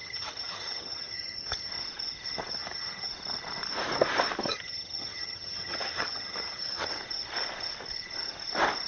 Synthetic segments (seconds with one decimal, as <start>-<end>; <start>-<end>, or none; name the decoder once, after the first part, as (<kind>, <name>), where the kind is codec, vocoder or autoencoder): 0.0-1.7 (vocoder, HiFi-GAN); 2.6-3.1; 4.5-6.9